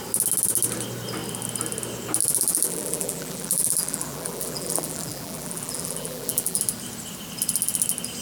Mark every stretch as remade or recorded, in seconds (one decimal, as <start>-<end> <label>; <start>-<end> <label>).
0.0-2.2 recorded; 2.2-6.6 remade; 6.6-8.2 recorded